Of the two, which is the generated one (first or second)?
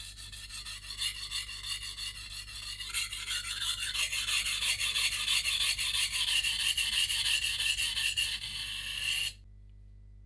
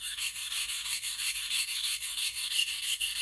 second